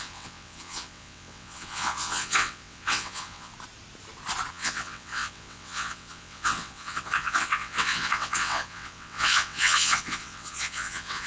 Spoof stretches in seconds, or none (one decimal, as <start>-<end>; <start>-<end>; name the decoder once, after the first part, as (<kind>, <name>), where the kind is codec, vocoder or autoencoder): 0.0-3.5 (vocoder, WaveNeXt); 4.5-11.3